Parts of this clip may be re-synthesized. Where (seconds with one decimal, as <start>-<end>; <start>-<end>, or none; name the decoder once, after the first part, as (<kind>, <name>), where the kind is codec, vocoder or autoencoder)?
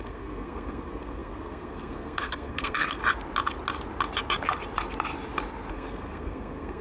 0.0-3.0 (codec, SNAC); 5.7-6.8